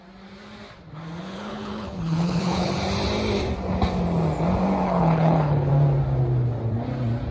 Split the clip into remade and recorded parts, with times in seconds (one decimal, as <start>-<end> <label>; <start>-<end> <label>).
0.0-1.2 recorded; 1.2-2.7 remade; 2.7-4.8 recorded; 4.8-5.7 remade; 5.7-7.3 recorded